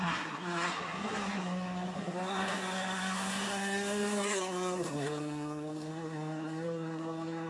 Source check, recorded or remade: remade